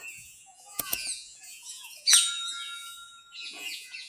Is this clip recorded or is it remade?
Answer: remade